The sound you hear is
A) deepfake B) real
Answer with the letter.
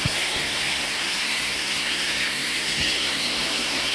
A